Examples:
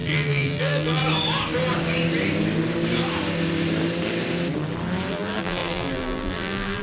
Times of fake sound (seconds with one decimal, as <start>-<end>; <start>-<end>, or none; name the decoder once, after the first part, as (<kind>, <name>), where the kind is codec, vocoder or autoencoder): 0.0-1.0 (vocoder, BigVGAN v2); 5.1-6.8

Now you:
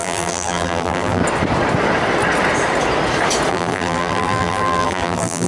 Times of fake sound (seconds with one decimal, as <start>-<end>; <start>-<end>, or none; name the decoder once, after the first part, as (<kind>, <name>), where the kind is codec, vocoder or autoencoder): 0.0-1.2 (vocoder, BigVGAN v2); 3.5-5.5

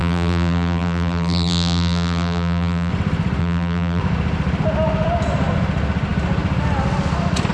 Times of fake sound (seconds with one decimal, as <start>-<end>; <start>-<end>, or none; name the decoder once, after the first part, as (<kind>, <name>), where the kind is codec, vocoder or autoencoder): 0.0-2.9 (vocoder, BigVGAN v2); 3.4-4.0

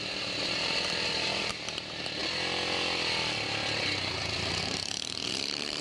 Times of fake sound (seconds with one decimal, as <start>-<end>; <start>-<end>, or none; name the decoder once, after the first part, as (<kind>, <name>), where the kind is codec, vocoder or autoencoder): 0.0-2.2 (vocoder, BigVGAN v2); 4.6-5.8

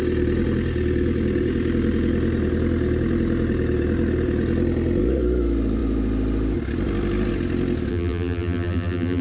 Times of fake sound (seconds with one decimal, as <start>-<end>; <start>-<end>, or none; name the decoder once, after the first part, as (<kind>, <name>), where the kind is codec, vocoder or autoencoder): 7.9-9.2 (vocoder, BigVGAN v2)

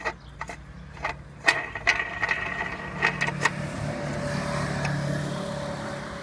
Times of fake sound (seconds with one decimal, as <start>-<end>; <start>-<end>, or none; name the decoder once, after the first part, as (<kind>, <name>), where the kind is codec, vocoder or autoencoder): none

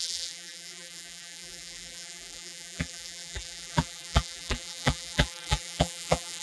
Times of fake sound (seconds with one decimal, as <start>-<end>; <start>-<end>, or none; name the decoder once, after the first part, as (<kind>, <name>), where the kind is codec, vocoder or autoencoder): 0.0-6.4 (vocoder, BigVGAN v2)